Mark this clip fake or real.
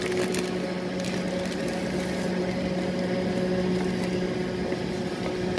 real